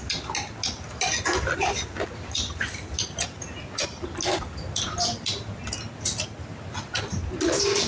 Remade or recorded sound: recorded